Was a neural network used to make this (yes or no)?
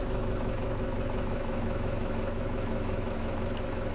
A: yes